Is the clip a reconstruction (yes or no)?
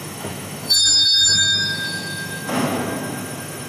yes